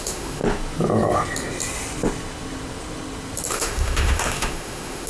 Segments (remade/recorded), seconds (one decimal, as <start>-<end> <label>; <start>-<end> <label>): 0.0-0.4 remade; 0.4-3.5 recorded; 3.5-5.1 remade